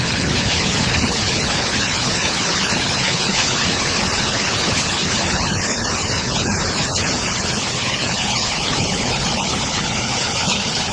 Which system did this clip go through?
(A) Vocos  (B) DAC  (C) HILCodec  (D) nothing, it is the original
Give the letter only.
C